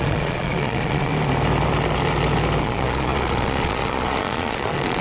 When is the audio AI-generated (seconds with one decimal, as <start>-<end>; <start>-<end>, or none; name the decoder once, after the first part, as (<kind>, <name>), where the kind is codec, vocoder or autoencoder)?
0.0-1.1 (vocoder, Vocos); 2.6-5.0